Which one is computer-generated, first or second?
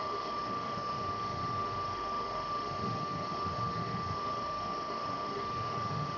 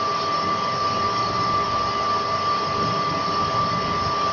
first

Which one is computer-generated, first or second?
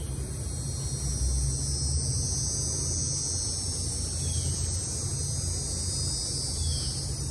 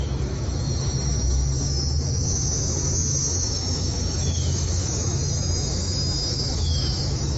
second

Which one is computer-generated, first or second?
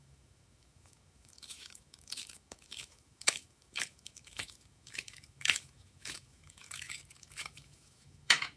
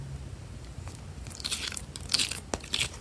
first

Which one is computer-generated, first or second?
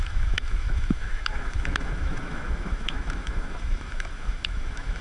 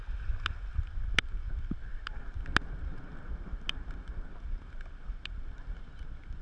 first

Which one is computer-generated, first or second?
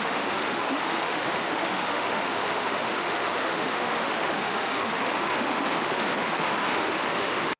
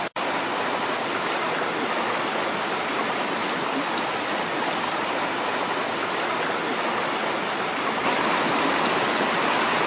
first